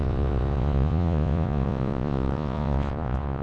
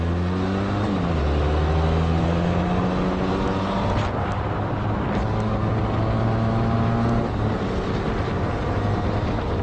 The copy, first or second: first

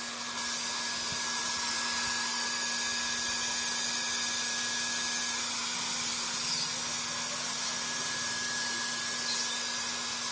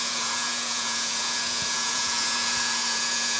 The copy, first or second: second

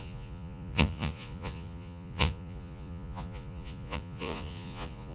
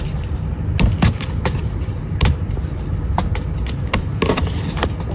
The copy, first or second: first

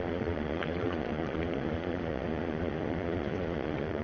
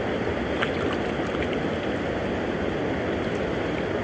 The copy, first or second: first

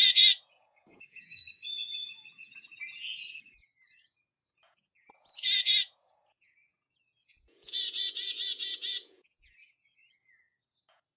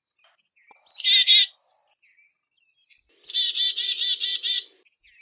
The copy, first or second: first